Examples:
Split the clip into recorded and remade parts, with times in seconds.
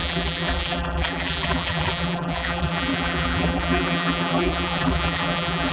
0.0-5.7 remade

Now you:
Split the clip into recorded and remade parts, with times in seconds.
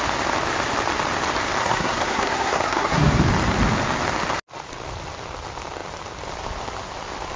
0.0-1.6 recorded; 1.6-3.2 remade; 3.2-7.4 recorded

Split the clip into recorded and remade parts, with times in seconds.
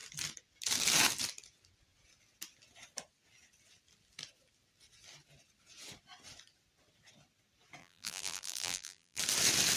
0.0-7.8 recorded; 7.8-9.2 remade; 9.2-9.8 recorded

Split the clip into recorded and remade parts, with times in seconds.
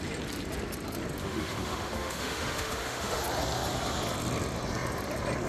0.0-1.2 recorded; 1.2-3.2 remade; 3.2-5.5 recorded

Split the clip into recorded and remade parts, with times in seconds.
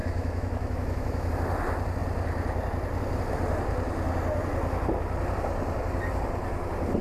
0.0-1.3 remade; 1.3-7.0 recorded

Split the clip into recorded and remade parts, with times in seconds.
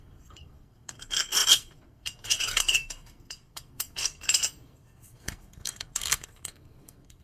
0.0-7.2 remade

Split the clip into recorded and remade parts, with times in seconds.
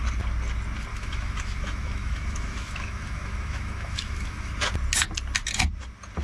0.0-0.9 recorded; 0.9-4.5 remade; 4.5-6.2 recorded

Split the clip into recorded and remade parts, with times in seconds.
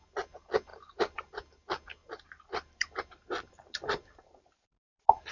0.0-0.7 recorded; 0.7-1.3 remade; 1.3-2.0 recorded; 2.0-5.3 remade